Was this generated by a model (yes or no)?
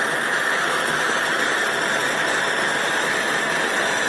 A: no